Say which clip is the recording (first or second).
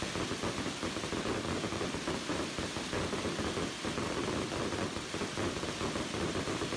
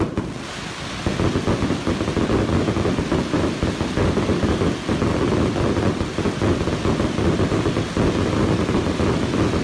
second